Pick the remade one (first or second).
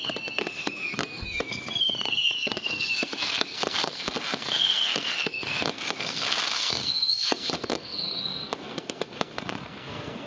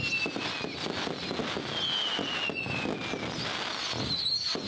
first